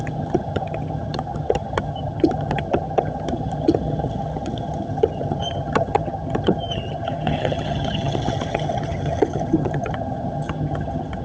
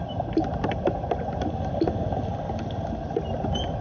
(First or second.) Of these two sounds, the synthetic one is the first